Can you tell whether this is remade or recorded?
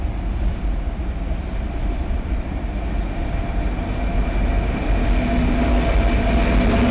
recorded